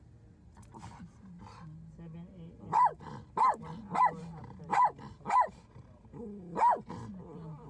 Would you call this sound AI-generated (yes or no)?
no